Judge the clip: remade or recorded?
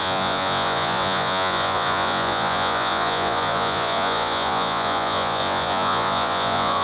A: remade